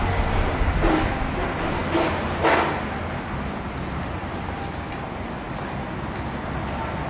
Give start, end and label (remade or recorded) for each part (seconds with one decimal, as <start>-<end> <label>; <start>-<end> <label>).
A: 0.0-7.1 recorded